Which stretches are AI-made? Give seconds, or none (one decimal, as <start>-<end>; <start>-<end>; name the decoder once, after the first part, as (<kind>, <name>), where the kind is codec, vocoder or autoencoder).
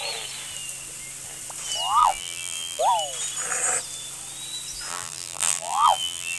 2.0-2.8 (vocoder, BigVGAN v2); 4.9-6.4